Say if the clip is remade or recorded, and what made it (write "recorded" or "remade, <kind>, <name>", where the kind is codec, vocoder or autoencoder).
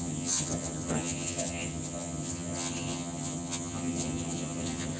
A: remade, vocoder, HiFi-GAN